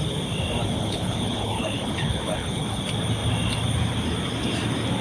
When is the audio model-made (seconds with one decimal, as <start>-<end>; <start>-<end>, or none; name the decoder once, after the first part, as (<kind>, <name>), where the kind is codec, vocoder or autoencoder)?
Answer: 0.8-2.8 (codec, HILCodec)